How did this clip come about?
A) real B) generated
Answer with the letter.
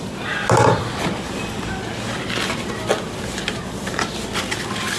A